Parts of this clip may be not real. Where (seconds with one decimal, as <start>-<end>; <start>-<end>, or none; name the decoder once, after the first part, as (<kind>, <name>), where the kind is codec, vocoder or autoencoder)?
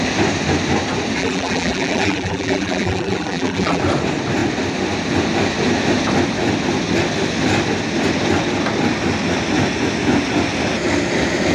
1.2-3.8 (vocoder, BigVGAN v2)